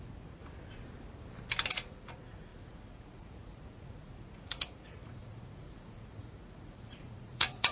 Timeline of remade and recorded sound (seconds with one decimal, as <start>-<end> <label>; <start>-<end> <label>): 0.0-0.4 remade; 0.4-1.7 recorded; 1.7-7.7 remade